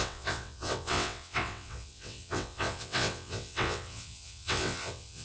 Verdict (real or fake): fake